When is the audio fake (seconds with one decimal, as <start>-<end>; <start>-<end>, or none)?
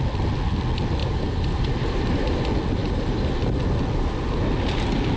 1.0-2.4; 2.8-3.3